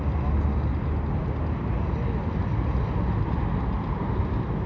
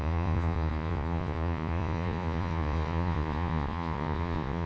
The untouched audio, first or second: first